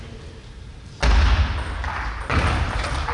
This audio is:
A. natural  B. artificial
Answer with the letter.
A